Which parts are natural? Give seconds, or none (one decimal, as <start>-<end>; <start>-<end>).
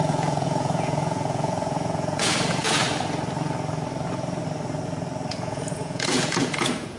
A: 2.8-5.3